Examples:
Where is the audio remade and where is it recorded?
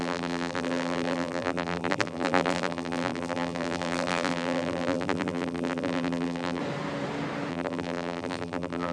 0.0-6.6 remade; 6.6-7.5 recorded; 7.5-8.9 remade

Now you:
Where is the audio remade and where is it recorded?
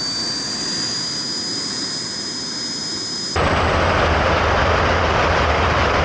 0.0-6.0 recorded